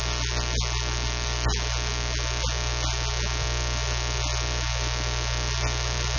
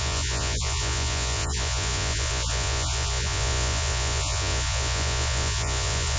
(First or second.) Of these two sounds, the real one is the first